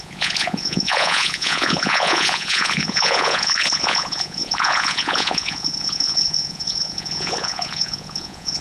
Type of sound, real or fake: fake